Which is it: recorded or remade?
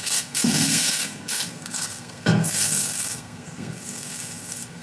remade